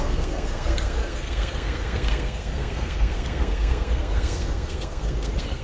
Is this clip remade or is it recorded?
remade